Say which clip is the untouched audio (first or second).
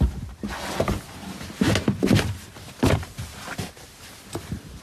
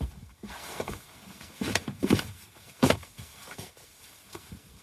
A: first